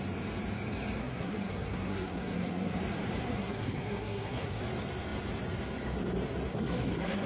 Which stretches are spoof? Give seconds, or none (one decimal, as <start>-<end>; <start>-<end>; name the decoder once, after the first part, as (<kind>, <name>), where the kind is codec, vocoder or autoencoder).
1.0-2.8 (codec, SNAC); 3.2-4.6; 6.5-7.3

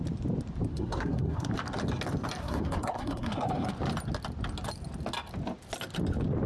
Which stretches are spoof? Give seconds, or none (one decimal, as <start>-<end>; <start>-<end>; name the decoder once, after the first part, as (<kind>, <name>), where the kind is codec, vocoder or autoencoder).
0.7-1.5 (codec, SNAC); 2.4-3.7

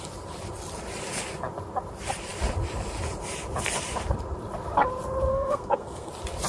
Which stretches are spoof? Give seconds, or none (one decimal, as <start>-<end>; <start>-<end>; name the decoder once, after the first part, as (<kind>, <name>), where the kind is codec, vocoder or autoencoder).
5.3-6.1 (codec, SNAC)